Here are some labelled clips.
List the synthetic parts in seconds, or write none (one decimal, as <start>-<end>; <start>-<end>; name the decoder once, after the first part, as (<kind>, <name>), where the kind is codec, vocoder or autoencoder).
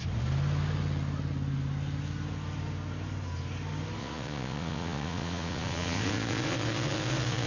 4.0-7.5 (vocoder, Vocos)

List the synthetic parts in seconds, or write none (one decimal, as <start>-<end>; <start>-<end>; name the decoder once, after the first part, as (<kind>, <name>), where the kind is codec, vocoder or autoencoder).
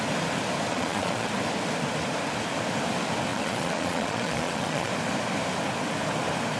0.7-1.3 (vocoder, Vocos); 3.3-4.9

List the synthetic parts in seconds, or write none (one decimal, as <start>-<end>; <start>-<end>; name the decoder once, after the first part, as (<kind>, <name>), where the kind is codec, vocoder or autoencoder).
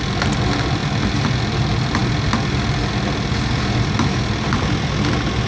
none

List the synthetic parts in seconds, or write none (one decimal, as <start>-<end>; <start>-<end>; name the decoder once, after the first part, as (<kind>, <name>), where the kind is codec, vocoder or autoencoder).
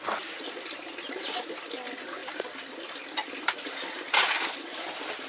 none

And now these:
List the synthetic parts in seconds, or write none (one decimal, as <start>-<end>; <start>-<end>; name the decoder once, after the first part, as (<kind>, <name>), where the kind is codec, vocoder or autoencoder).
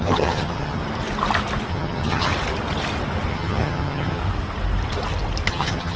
0.0-0.8 (vocoder, HiFi-GAN); 1.7-2.3; 3.3-4.2; 5.5-6.0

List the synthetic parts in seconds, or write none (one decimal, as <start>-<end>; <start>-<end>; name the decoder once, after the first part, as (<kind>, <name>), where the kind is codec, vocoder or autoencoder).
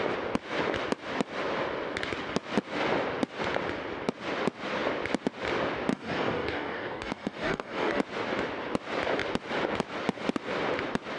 5.9-8.0 (codec, DAC)